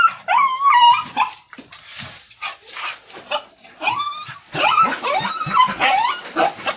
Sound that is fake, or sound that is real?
fake